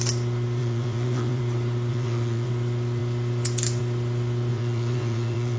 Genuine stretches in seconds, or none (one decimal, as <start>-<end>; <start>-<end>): 0.0-0.6; 1.4-1.9; 2.5-4.5